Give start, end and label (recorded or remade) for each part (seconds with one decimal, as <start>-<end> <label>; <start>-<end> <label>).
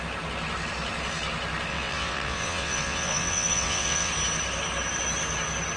0.0-1.7 recorded; 1.7-4.1 remade; 4.1-5.8 recorded